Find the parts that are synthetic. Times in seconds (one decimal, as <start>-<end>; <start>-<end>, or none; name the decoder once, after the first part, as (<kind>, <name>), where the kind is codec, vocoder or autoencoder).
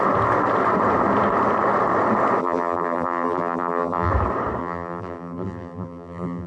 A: 2.4-4.1 (vocoder, BigVGAN v2); 4.6-6.5